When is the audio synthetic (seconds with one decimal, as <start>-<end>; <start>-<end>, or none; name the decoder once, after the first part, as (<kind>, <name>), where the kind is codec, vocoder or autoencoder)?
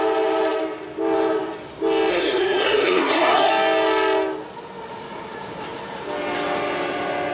2.1-3.5 (codec, SNAC)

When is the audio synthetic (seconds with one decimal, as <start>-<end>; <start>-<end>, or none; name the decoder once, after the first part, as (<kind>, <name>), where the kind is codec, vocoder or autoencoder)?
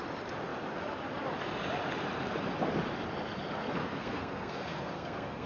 3.8-5.5 (codec, SNAC)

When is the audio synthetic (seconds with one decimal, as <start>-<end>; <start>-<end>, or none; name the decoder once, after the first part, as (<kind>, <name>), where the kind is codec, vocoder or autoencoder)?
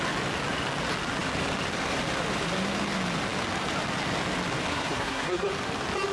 4.7-5.5 (codec, SNAC)